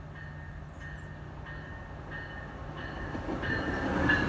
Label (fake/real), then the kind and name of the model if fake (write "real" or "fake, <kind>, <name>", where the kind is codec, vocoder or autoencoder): real